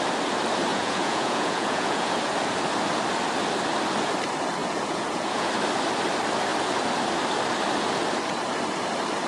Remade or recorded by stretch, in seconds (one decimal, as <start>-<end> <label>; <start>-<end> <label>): 0.0-0.7 recorded; 0.7-2.1 remade; 2.1-4.6 recorded; 4.6-5.5 remade; 5.5-9.3 recorded